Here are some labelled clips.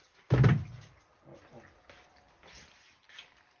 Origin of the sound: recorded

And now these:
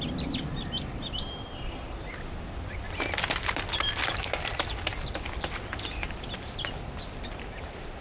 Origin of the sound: recorded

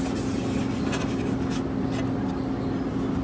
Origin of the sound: recorded